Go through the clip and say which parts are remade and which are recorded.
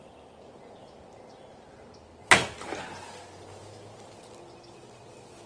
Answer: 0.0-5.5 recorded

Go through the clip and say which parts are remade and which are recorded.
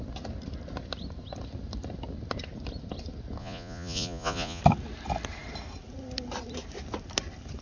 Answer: 0.0-3.4 recorded; 3.4-4.6 remade; 4.6-7.6 recorded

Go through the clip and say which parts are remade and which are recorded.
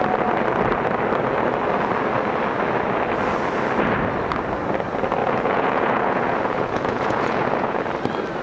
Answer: 0.0-5.2 recorded; 5.2-7.8 remade; 7.8-8.4 recorded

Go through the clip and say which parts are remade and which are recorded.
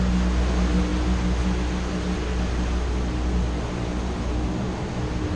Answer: 0.0-5.4 recorded